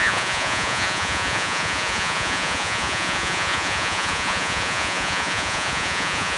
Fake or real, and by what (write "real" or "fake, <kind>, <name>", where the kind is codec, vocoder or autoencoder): fake, vocoder, Vocos